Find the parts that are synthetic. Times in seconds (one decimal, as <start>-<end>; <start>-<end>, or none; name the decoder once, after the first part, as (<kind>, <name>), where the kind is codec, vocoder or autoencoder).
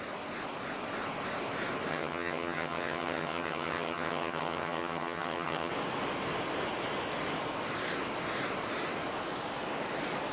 1.9-5.7 (vocoder, HiFi-GAN)